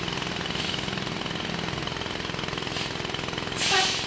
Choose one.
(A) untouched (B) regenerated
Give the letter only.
A